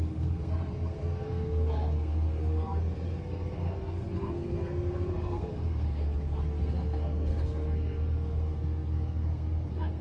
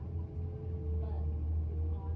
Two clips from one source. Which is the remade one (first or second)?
first